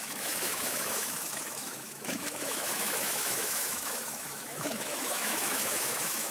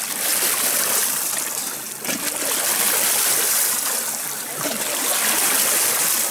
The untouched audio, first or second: second